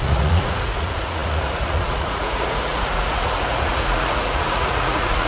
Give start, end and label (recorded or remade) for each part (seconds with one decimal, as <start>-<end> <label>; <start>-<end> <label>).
0.0-5.3 remade